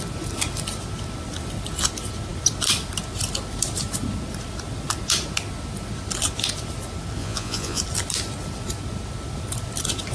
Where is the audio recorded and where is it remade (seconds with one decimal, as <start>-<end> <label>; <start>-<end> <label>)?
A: 0.0-7.2 recorded; 7.2-7.8 remade; 7.8-10.1 recorded